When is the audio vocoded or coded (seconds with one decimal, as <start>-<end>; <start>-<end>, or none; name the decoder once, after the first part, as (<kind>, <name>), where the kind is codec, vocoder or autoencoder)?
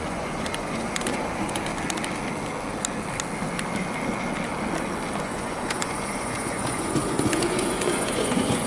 0.0-1.7 (vocoder, Vocos); 5.2-8.7